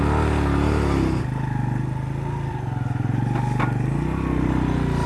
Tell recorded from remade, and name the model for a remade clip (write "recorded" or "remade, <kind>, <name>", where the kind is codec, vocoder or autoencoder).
recorded